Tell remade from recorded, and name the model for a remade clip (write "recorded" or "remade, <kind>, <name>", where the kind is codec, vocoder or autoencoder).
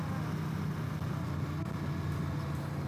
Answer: recorded